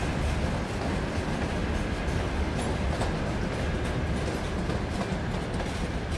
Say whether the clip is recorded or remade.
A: recorded